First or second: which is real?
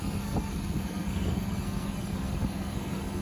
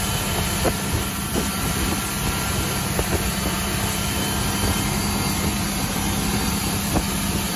second